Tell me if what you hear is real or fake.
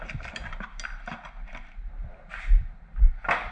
real